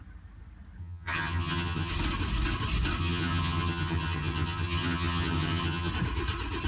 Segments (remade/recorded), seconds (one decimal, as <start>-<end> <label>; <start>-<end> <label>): 0.0-0.8 recorded; 0.8-1.9 remade; 1.9-3.0 recorded; 3.0-5.9 remade; 5.9-6.7 recorded

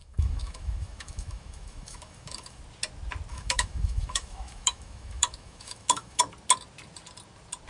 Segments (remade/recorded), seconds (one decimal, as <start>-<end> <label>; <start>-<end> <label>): 0.0-2.6 remade; 2.6-3.3 recorded; 3.3-6.2 remade; 6.2-7.7 recorded

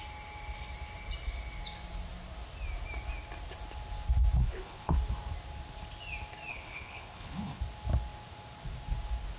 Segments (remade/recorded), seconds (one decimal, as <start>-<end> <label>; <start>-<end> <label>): 0.0-4.4 recorded; 4.4-4.9 remade; 4.9-6.5 recorded; 6.5-7.6 remade; 7.6-9.4 recorded

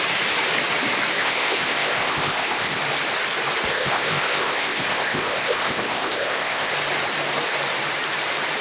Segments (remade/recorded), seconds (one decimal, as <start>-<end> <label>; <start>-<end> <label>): 0.0-1.2 recorded; 1.2-2.8 remade; 2.8-3.7 recorded; 3.7-6.7 remade; 6.7-8.6 recorded

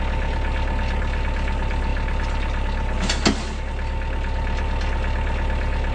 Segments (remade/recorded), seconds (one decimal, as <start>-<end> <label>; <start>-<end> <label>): 0.0-5.9 recorded

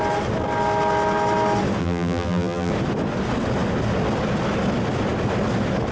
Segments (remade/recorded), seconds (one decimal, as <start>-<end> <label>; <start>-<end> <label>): 0.0-1.8 recorded; 1.8-2.7 remade; 2.7-5.9 recorded

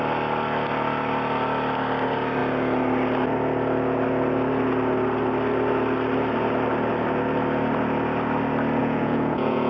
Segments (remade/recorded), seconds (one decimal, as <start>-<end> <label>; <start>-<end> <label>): 0.0-8.8 recorded; 8.8-9.7 remade

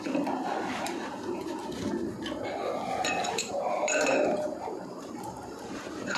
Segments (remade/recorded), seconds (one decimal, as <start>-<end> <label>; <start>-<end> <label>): 0.0-1.6 remade; 1.6-3.2 recorded; 3.2-6.2 remade